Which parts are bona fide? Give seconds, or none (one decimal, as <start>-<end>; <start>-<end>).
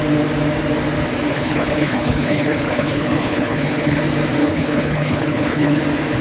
0.0-1.3; 4.0-4.4; 5.8-6.2